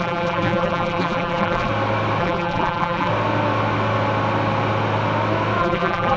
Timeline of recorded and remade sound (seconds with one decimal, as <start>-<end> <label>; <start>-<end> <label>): 0.0-1.7 remade; 1.7-2.2 recorded; 2.2-3.1 remade; 3.1-5.6 recorded; 5.6-6.2 remade